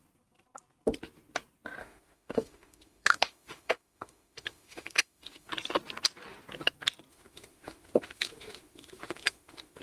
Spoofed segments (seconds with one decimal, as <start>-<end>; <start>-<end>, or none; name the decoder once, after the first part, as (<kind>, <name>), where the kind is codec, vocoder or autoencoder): 1.8-5.5 (autoencoder, DAC-VAE); 7.1-9.8